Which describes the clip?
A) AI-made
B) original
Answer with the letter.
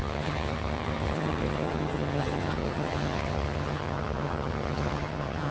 A